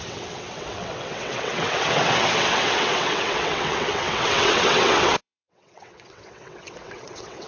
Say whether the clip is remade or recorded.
remade